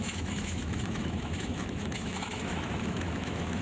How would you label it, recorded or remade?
remade